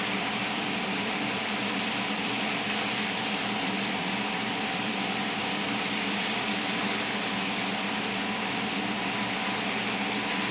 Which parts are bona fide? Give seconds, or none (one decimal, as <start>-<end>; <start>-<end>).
6.5-10.5